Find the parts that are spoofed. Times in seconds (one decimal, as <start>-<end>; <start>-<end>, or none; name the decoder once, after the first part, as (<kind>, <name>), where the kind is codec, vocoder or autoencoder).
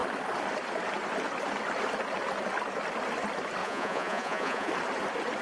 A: 3.6-4.7 (vocoder, Vocos)